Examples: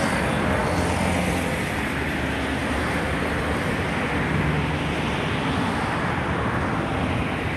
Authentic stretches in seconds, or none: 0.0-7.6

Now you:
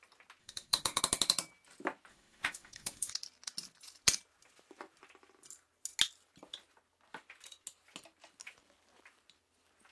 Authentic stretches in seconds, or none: 0.0-0.4; 1.0-2.1; 3.1-9.9

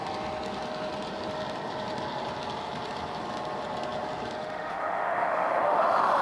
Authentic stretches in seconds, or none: 0.0-4.4

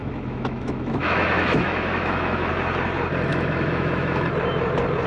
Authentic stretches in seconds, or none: 2.5-3.3; 4.3-5.1

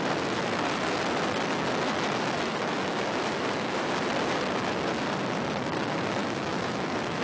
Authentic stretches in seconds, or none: 0.0-2.5; 3.9-6.2

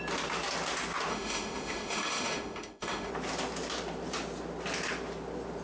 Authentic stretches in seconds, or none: 0.0-1.1; 3.1-5.6

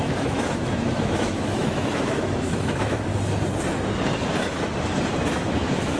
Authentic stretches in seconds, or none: 3.1-5.3